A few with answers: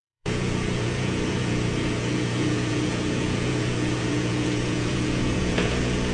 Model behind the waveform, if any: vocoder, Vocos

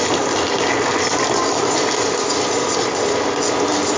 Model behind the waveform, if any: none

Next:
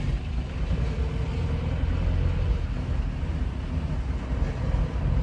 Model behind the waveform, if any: none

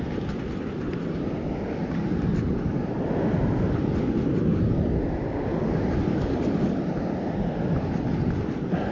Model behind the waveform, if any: none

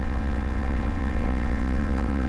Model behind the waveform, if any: vocoder, WaveNeXt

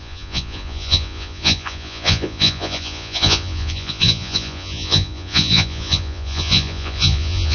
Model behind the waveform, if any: vocoder, Vocos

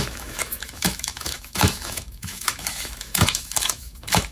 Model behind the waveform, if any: autoencoder, DAC-VAE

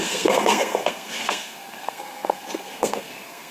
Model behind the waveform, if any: codec, SNAC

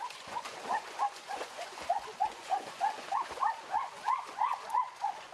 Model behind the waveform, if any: vocoder, Vocos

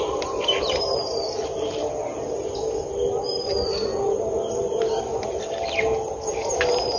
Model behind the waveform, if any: none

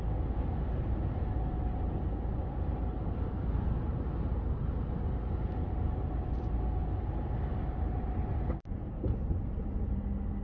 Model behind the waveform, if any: none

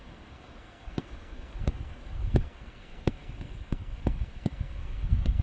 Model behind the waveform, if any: codec, SNAC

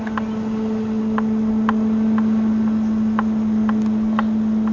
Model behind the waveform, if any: none